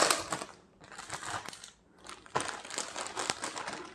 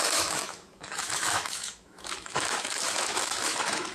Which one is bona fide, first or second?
first